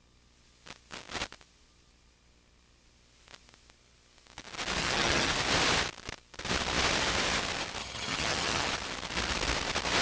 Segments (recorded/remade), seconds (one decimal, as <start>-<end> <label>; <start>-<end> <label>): 0.0-4.8 recorded; 4.8-5.3 remade; 5.3-7.8 recorded; 7.8-8.7 remade; 8.7-10.0 recorded